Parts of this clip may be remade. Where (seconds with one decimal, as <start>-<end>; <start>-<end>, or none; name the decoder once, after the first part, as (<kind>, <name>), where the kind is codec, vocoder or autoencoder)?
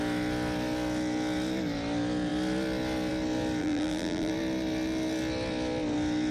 3.6-4.3 (vocoder, BigVGAN v2)